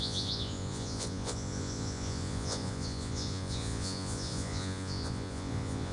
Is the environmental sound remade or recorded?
remade